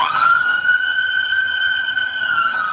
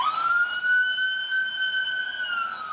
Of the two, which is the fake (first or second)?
first